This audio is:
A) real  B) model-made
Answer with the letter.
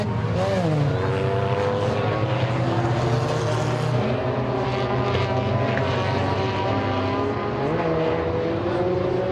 A